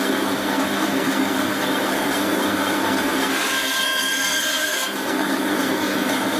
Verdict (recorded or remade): remade